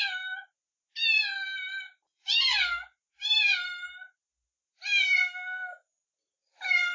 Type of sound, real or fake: real